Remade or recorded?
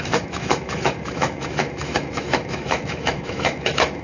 remade